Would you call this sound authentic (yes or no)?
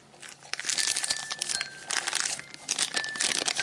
yes